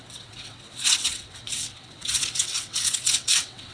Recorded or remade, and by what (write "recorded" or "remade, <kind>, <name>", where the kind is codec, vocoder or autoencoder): remade, vocoder, WaveNeXt